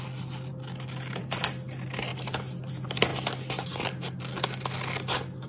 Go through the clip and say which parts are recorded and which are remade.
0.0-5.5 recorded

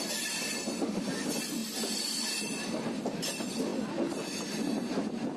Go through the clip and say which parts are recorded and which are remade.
0.0-5.4 recorded

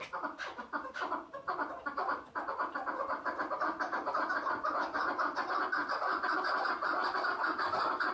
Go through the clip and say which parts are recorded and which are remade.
0.0-8.1 recorded